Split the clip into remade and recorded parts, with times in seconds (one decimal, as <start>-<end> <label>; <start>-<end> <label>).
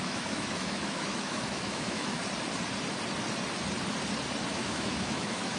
0.0-2.2 remade; 2.2-4.5 recorded; 4.5-5.6 remade